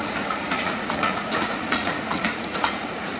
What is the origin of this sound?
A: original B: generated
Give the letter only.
B